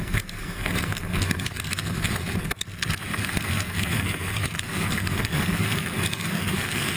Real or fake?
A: fake